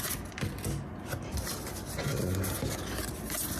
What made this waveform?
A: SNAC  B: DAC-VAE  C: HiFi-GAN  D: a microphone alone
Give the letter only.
D